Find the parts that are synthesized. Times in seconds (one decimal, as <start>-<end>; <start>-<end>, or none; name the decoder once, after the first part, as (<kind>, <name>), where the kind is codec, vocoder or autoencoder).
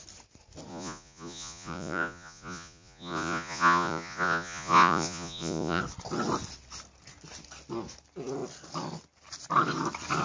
0.7-5.8 (vocoder, Vocos)